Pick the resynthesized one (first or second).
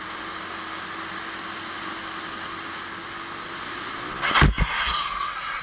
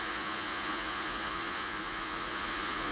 second